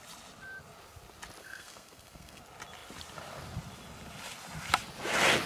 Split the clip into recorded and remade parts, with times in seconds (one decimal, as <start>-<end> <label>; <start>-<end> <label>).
0.0-1.4 recorded; 1.4-2.4 remade; 2.4-5.5 recorded